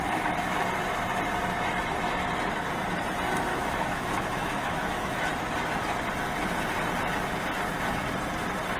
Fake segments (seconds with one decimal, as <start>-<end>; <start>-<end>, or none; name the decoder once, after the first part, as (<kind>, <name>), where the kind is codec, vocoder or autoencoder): 3.5-5.3 (autoencoder, DAC-VAE)